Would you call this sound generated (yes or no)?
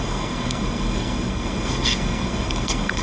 yes